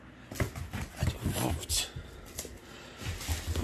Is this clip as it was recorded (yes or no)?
yes